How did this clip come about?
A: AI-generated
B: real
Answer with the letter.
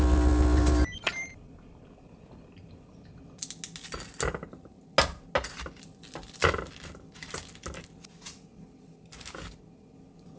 B